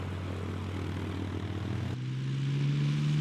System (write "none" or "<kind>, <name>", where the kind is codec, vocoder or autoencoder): none